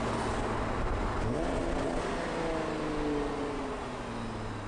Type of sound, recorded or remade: recorded